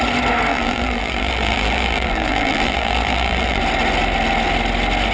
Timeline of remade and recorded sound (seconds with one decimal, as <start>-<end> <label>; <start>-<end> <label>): 0.0-0.5 recorded; 0.5-3.6 remade; 3.6-5.1 recorded